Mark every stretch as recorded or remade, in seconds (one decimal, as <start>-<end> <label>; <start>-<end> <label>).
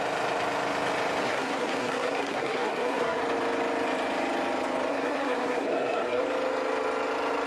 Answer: 0.0-1.2 recorded; 1.2-3.2 remade; 3.2-4.9 recorded; 4.9-6.2 remade; 6.2-7.5 recorded